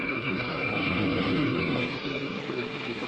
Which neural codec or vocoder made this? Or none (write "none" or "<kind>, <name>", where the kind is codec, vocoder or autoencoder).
codec, SNAC